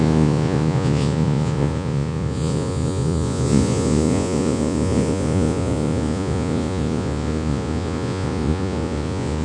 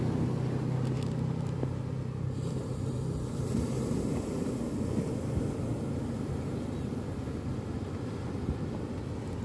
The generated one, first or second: first